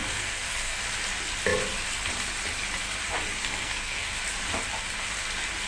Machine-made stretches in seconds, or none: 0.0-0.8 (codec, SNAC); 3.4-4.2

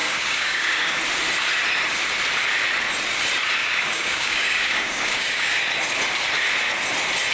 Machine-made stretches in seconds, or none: 0.0-1.0 (codec, DAC); 3.6-5.6

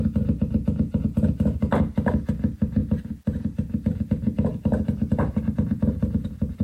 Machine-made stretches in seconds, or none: none